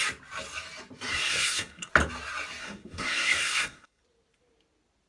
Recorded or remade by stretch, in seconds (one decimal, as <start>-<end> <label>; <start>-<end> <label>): 0.0-1.1 recorded; 1.1-1.9 remade; 1.9-2.6 recorded; 2.6-4.0 remade; 4.0-5.1 recorded